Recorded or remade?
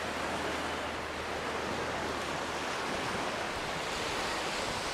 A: recorded